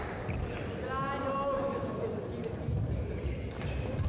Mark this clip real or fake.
real